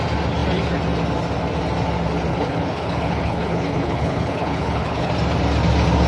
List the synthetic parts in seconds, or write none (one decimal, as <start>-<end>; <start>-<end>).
2.3-5.1